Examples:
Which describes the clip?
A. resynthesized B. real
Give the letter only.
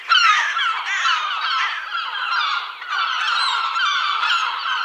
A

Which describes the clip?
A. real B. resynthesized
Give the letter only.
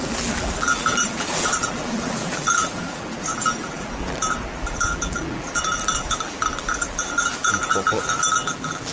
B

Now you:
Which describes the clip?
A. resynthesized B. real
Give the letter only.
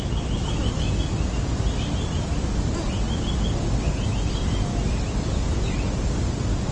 A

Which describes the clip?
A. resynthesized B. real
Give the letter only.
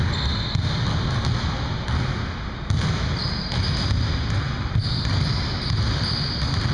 B